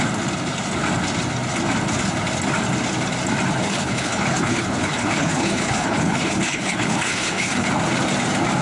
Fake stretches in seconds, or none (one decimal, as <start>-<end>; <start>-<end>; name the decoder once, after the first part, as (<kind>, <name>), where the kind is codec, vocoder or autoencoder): 3.6-7.7 (codec, HILCodec)